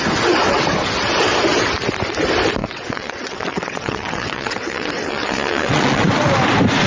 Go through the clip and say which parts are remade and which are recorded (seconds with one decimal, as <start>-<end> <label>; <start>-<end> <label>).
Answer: 0.0-2.6 recorded; 2.6-6.1 remade; 6.1-6.9 recorded